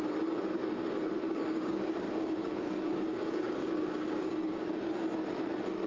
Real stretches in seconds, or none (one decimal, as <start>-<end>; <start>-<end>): 0.0-1.2; 4.7-5.9